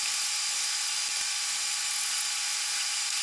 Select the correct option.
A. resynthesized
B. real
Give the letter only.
B